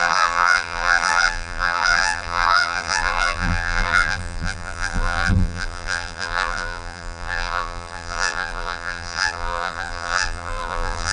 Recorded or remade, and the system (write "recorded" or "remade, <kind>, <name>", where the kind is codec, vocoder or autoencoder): remade, vocoder, BigVGAN v2